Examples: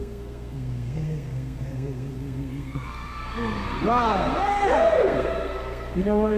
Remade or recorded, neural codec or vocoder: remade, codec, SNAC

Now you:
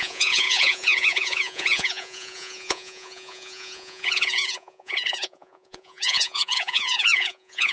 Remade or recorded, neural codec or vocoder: remade, vocoder, Vocos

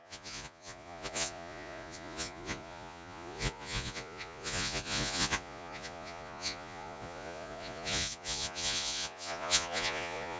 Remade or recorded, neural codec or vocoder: remade, vocoder, Vocos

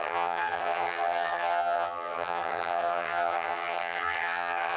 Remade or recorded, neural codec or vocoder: remade, vocoder, HiFi-GAN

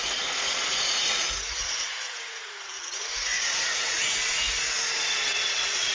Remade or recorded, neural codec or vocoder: remade, vocoder, Vocos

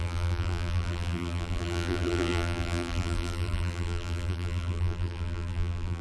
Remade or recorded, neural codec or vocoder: remade, vocoder, BigVGAN v2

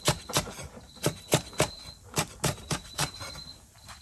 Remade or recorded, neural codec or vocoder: remade, vocoder, BigVGAN v2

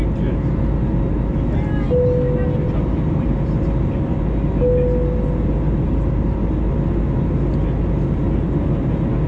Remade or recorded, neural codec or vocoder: recorded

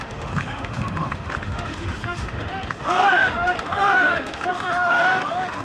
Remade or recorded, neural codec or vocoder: remade, autoencoder, DAC-VAE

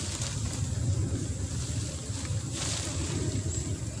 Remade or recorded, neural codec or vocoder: recorded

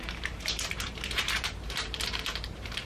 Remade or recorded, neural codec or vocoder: remade, vocoder, BigVGAN v2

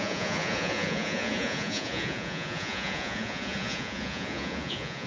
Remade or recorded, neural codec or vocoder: remade, vocoder, Vocos